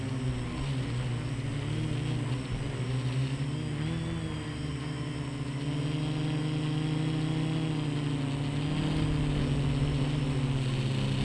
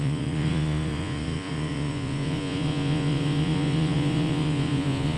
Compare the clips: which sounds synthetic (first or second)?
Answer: second